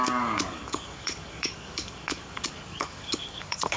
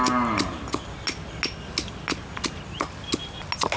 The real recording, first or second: second